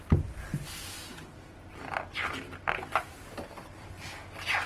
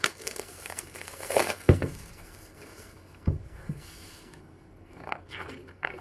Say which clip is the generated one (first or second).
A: second